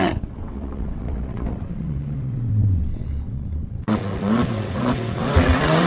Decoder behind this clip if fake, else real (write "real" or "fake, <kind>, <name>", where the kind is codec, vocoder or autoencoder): fake, vocoder, WaveNeXt